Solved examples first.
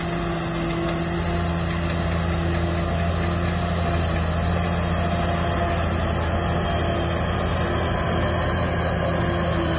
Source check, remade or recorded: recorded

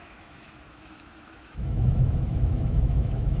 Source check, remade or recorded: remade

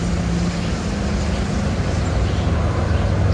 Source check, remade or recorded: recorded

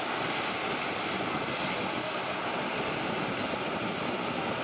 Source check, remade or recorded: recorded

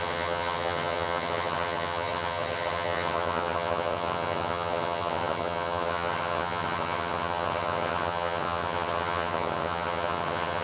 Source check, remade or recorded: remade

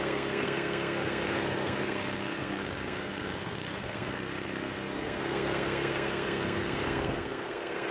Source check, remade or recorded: remade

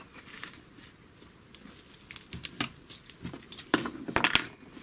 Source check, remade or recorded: recorded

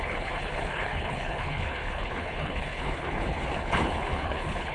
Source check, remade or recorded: remade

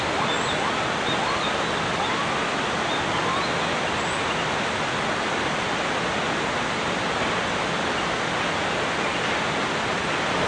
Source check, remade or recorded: recorded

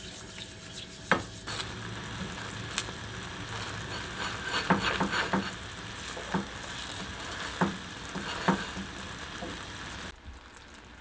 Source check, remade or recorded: recorded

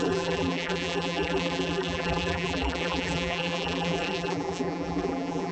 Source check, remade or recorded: remade